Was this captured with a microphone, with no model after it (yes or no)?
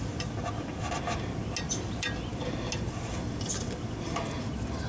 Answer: yes